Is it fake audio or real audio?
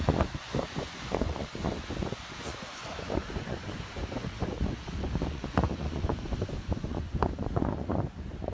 fake